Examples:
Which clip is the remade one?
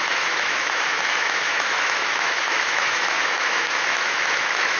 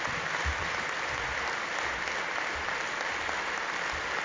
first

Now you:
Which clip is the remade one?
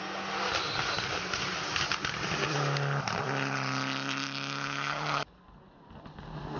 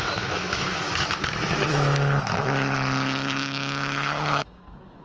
second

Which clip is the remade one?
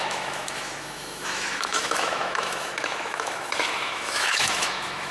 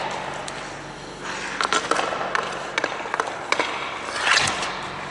first